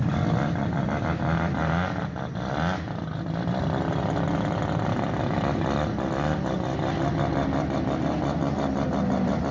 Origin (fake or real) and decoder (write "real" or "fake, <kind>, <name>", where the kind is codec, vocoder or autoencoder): real